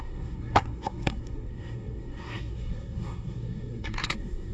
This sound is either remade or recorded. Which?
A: remade